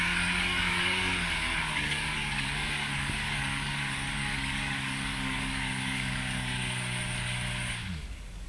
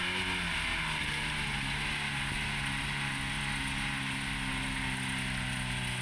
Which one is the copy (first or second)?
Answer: first